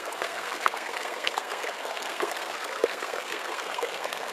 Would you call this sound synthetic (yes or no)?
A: yes